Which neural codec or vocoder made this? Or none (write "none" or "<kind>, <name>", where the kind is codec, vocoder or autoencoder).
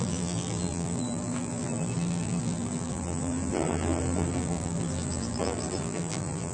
vocoder, BigVGAN v2